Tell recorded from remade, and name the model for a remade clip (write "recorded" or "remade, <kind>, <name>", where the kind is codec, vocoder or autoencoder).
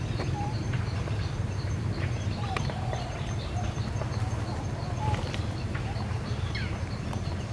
remade, vocoder, BigVGAN v2